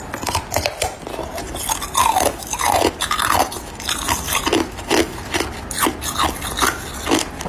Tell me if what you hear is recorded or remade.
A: recorded